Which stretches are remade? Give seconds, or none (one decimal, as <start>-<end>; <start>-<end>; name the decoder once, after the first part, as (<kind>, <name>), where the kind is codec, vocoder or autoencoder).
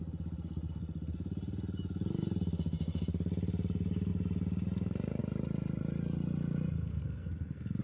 6.9-7.8 (codec, SNAC)